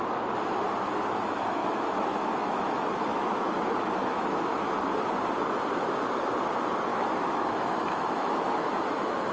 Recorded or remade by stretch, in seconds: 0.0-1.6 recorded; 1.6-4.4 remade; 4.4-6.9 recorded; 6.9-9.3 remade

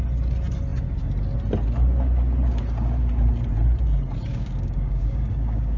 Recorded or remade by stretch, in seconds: 0.0-4.3 recorded; 4.3-5.8 remade